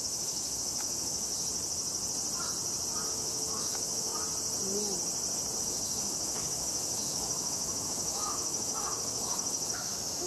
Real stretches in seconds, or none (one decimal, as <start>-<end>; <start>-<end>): 1.3-3.1; 4.1-5.6